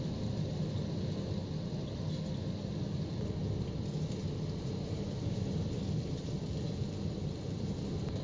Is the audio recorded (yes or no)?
yes